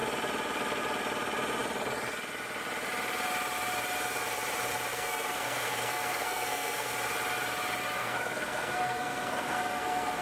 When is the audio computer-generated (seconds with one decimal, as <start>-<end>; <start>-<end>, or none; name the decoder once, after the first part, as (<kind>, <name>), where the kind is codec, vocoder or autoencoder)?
4.9-6.9 (codec, SNAC); 8.0-10.2